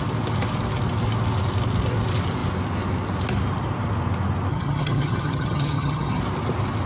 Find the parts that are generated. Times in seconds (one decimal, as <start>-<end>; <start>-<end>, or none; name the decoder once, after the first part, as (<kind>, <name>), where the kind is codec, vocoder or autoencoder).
4.5-6.2 (vocoder, HiFi-GAN)